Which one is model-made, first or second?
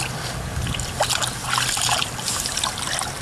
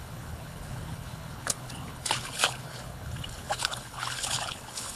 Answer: second